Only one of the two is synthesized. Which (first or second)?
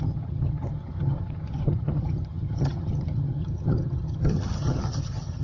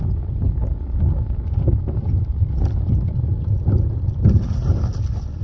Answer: first